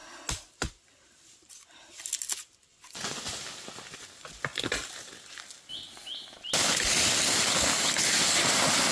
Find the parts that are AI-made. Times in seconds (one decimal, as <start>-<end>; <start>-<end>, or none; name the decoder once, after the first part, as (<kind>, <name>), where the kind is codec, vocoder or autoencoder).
2.7-3.2 (vocoder, Vocos)